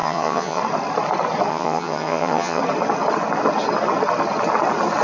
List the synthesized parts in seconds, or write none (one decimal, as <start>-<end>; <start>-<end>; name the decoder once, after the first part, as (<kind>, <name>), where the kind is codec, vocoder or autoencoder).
0.0-0.6 (vocoder, HiFi-GAN); 1.5-2.6